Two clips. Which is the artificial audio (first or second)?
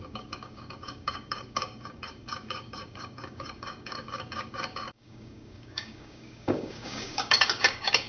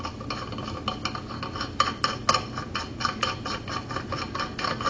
first